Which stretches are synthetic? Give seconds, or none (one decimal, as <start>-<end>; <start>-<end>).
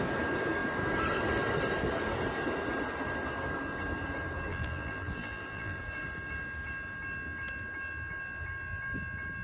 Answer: 4.5-5.8